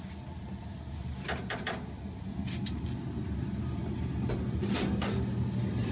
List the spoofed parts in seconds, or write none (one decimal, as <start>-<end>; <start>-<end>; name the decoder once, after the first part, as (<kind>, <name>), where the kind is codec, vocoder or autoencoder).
none